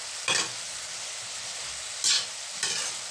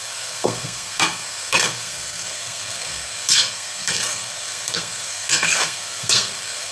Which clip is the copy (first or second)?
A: second